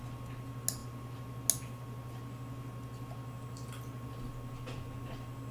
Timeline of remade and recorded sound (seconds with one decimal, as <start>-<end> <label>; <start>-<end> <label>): 0.0-5.5 recorded